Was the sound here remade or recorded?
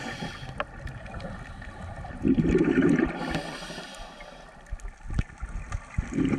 recorded